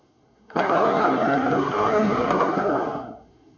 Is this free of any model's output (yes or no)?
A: no